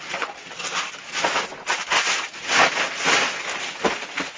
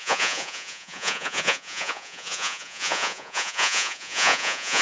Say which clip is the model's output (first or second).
second